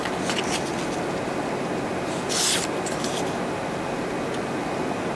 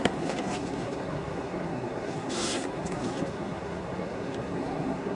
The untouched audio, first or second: first